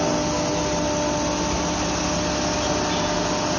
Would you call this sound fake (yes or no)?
no